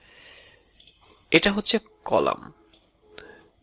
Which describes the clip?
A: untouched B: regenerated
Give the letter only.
A